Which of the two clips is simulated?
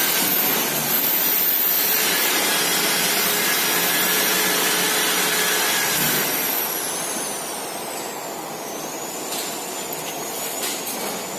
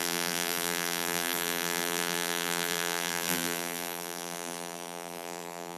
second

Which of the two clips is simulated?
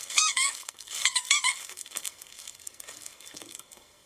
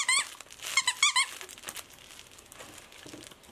first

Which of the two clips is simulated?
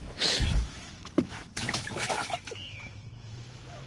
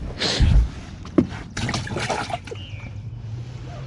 first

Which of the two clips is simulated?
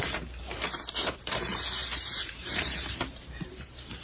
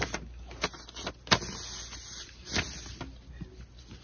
first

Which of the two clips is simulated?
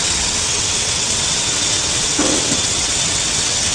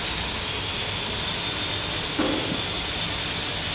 first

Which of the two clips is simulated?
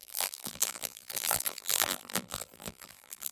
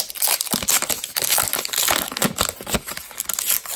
first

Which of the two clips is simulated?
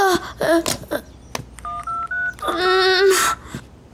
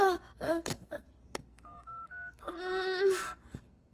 second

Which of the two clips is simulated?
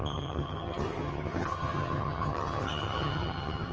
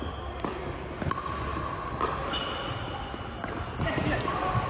first